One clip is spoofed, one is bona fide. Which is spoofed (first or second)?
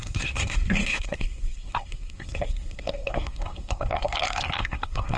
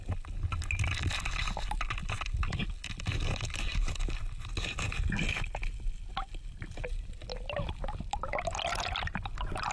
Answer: first